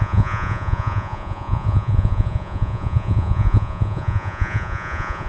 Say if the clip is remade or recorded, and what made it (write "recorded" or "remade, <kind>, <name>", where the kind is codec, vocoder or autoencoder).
remade, vocoder, Vocos